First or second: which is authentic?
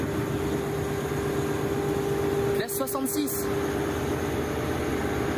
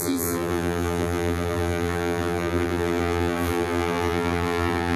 first